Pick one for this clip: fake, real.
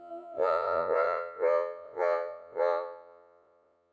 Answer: fake